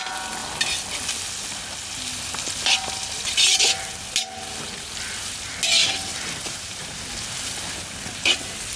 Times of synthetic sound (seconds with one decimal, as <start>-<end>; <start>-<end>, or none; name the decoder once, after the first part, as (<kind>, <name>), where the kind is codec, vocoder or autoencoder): 5.8-7.0 (vocoder, BigVGAN v2)